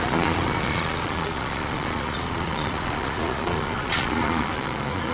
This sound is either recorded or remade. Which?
remade